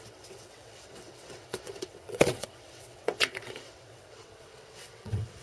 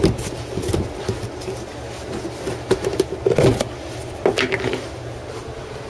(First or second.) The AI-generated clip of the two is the first